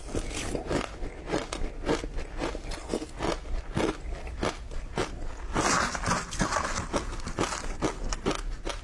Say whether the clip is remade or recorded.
recorded